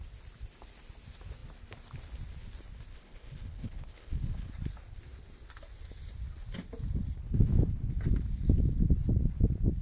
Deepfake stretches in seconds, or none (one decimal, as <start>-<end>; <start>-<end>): 2.9-4.5; 7.2-7.9